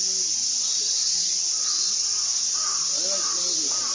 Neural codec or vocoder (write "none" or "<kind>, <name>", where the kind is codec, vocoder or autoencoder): none